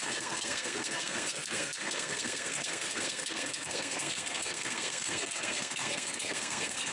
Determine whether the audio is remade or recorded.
remade